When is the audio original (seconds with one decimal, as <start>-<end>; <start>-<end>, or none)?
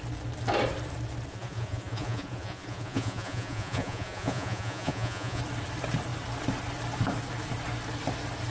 0.0-1.3; 5.4-8.5